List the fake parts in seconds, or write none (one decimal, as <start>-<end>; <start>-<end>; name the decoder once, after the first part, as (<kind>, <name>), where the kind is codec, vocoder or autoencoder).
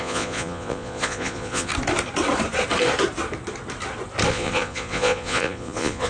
0.0-1.7 (vocoder, Vocos); 4.3-6.1